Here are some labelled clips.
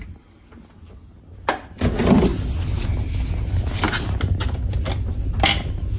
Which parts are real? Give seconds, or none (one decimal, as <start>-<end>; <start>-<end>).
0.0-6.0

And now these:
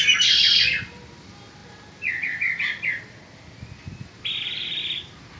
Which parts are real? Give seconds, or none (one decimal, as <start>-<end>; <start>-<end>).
0.0-5.4

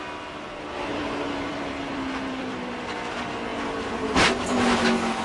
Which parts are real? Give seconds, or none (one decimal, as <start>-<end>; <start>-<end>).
0.0-0.9; 2.7-3.5; 4.0-5.2